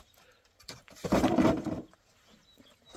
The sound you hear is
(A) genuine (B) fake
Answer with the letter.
B